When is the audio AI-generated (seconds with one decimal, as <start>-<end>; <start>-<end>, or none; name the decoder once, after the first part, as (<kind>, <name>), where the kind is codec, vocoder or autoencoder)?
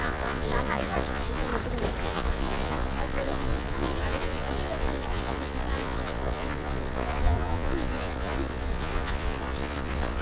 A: 0.0-1.5 (vocoder, Vocos); 2.0-10.2